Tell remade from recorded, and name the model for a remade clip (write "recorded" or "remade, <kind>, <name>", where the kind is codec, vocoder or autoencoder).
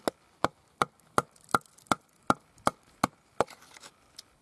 recorded